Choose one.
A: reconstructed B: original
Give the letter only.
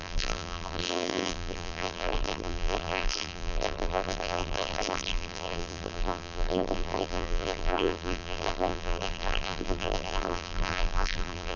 A